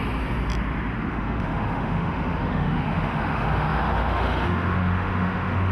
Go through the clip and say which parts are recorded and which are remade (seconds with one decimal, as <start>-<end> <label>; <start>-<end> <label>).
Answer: 0.0-1.1 recorded; 1.1-5.7 remade

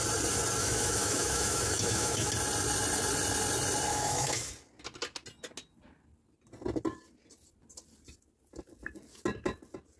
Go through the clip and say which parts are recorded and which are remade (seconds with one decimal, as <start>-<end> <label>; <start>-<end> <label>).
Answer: 0.0-0.6 recorded; 0.6-2.3 remade; 2.3-3.9 recorded; 3.9-4.5 remade; 4.5-10.0 recorded

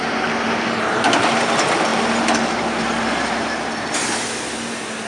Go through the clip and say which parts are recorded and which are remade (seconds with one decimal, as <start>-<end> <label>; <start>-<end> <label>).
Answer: 0.0-5.1 recorded

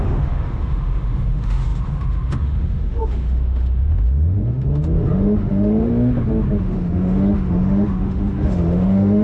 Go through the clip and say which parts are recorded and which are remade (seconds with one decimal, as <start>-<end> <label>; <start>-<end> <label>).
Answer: 0.0-5.9 remade; 5.9-6.6 recorded; 6.6-9.2 remade

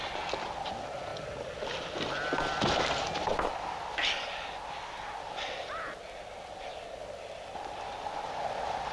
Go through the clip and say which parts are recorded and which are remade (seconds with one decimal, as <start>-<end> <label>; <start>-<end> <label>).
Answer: 0.0-8.9 recorded

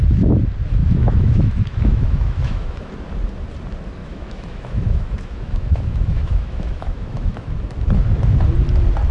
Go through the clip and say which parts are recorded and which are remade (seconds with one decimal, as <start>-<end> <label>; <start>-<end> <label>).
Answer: 0.0-0.8 recorded; 0.8-2.9 remade; 2.9-4.0 recorded; 4.0-7.5 remade; 7.5-9.1 recorded

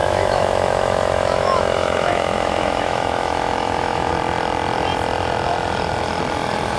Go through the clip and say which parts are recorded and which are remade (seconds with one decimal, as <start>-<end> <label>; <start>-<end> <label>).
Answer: 0.0-4.1 remade; 4.1-6.8 recorded

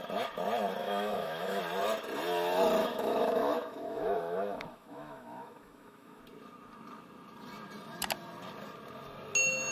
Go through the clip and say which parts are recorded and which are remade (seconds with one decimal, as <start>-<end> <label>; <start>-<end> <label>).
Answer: 0.0-0.8 recorded; 0.8-1.6 remade; 1.6-2.8 recorded; 2.8-6.2 remade; 6.2-9.7 recorded